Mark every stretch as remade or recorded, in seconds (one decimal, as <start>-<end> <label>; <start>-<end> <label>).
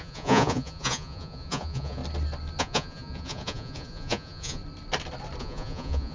0.0-2.0 remade; 2.0-2.6 recorded; 2.6-4.6 remade; 4.6-5.4 recorded; 5.4-6.1 remade